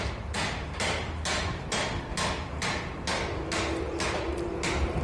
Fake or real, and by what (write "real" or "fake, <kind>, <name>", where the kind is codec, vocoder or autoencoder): real